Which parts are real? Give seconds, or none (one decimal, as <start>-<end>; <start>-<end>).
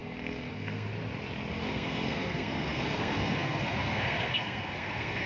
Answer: 0.9-1.5